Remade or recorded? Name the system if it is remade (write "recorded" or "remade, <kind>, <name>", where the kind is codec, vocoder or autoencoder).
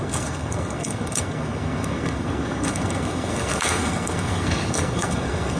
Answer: remade, codec, SNAC